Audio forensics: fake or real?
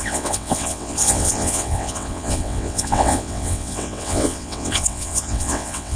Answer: fake